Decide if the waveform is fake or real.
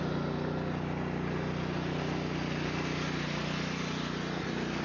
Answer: real